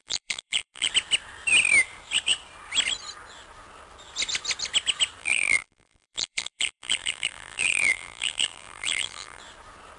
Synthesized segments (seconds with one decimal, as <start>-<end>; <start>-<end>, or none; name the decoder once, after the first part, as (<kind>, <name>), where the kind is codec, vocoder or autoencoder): 0.0-0.9 (vocoder, BigVGAN v2); 5.2-9.4